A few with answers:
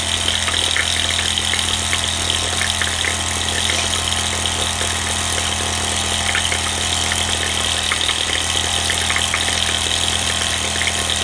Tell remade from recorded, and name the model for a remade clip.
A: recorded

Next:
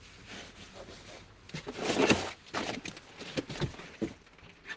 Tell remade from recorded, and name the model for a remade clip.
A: recorded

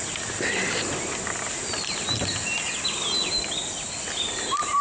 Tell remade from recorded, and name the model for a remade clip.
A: recorded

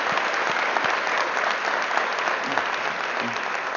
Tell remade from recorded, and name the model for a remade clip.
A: recorded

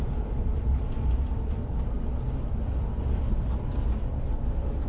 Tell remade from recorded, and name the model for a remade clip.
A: recorded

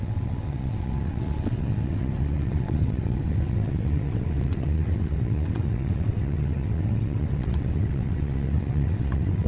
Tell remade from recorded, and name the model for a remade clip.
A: remade, vocoder, WaveNeXt